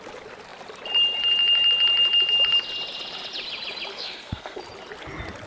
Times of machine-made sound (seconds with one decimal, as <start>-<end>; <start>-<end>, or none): 3.9-4.6